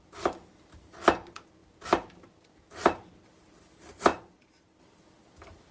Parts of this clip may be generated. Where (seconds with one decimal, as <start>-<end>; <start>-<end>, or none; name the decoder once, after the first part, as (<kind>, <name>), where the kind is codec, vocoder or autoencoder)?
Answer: none